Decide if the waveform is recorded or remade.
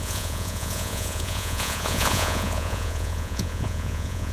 remade